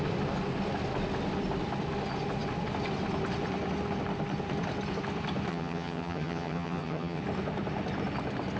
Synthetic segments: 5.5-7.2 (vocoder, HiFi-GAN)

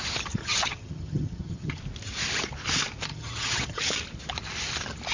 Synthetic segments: 0.4-1.8 (vocoder, HiFi-GAN); 3.1-3.8

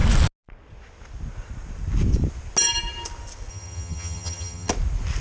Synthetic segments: 3.5-4.7 (vocoder, HiFi-GAN)

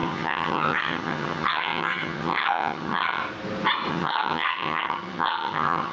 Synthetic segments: 0.0-3.2 (vocoder, HiFi-GAN); 3.9-5.9